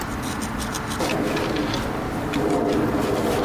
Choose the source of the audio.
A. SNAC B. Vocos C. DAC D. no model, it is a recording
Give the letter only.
D